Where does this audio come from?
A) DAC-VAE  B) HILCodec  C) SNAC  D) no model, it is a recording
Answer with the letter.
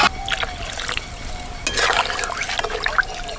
D